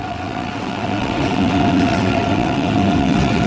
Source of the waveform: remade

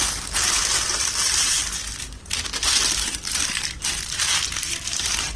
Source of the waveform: recorded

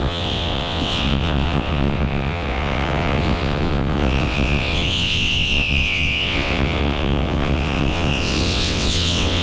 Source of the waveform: remade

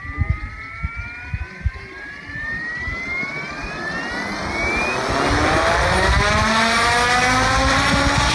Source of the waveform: recorded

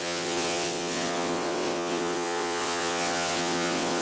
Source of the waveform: remade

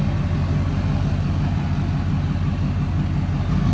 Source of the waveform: recorded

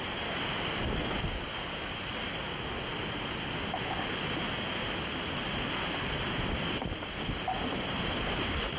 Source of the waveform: recorded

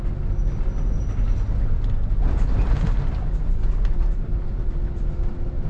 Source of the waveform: recorded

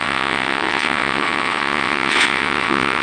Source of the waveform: remade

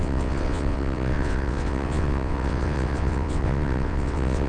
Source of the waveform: remade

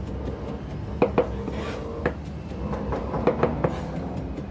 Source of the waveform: recorded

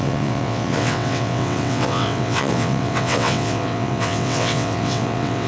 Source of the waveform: remade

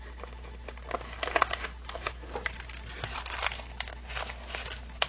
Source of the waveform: recorded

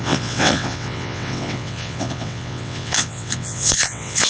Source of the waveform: remade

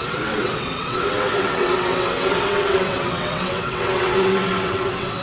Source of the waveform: remade